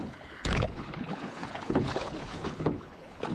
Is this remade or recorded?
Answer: remade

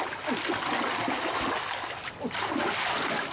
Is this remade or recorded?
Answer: recorded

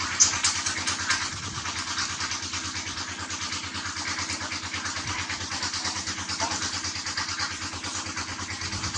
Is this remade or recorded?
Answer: recorded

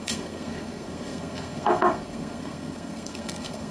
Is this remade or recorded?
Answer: remade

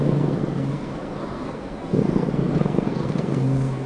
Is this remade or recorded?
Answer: remade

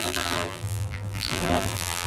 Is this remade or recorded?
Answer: remade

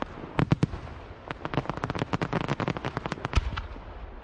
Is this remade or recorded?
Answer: recorded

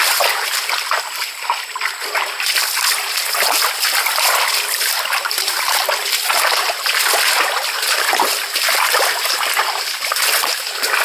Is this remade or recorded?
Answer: recorded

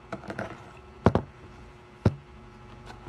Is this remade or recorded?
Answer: recorded